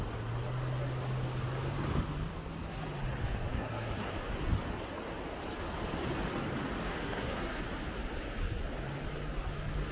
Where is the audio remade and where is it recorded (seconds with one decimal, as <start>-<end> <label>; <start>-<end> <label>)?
0.0-3.5 recorded; 3.5-4.1 remade; 4.1-6.9 recorded; 6.9-7.6 remade; 7.6-9.9 recorded